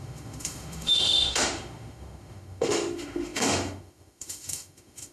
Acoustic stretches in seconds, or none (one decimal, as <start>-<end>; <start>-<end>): none